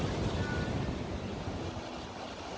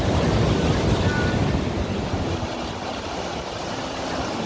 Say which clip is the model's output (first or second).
second